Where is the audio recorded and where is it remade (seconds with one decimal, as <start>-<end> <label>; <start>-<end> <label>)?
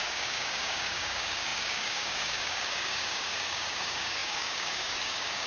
0.0-5.5 remade